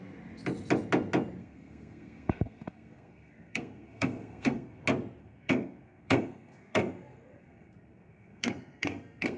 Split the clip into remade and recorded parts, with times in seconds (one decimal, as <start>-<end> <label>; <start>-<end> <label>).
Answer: 0.0-1.4 recorded; 1.4-4.8 remade; 4.8-5.2 recorded; 5.2-9.4 remade